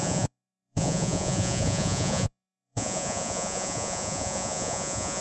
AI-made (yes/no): yes